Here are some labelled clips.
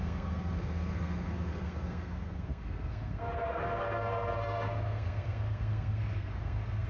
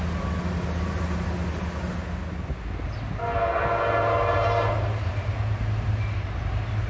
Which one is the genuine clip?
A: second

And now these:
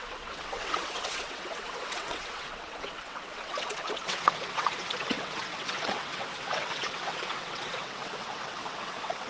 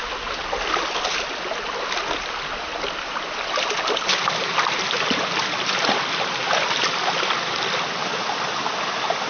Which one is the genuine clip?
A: second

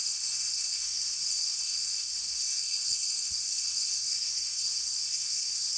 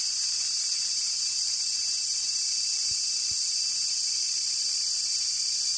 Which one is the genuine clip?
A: second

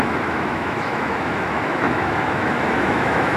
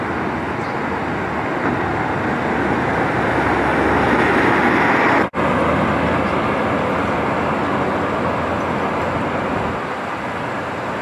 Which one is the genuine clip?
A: second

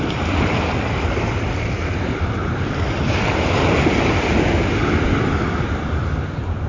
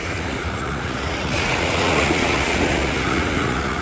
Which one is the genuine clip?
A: first